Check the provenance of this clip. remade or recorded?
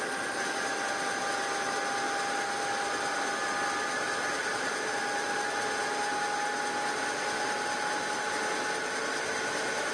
recorded